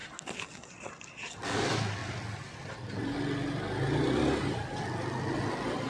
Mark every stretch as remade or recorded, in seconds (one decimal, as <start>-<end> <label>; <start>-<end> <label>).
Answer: 0.0-5.9 recorded